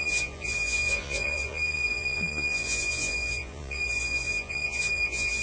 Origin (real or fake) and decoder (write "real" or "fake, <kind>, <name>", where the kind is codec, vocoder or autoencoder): fake, vocoder, Vocos